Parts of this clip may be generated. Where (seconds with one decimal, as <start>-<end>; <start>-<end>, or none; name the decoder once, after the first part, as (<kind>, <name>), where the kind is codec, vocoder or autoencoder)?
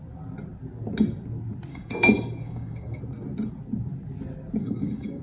1.7-3.0 (codec, DAC); 4.6-5.2